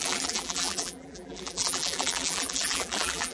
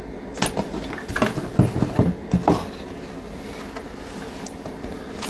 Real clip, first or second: second